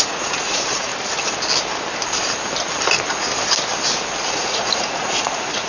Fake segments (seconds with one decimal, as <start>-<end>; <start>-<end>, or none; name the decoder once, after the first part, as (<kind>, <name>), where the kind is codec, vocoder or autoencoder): 0.0-0.9 (vocoder, Vocos); 4.3-5.7